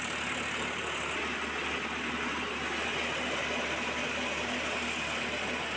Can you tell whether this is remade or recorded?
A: recorded